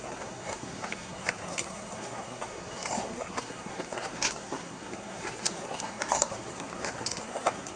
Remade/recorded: remade